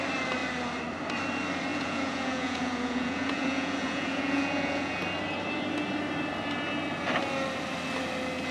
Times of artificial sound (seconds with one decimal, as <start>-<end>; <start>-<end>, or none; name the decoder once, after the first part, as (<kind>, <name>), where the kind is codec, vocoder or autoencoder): 1.7-5.0 (vocoder, Vocos)